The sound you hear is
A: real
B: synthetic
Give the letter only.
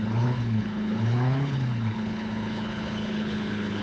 B